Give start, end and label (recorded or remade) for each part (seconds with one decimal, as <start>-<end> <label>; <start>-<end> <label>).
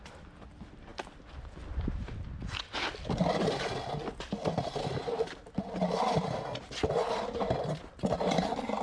0.0-8.8 recorded